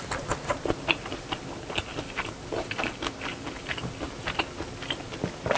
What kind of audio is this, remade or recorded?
recorded